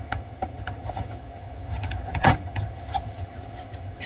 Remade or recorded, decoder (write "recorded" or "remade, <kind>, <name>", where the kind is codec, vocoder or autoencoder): remade, vocoder, HiFi-GAN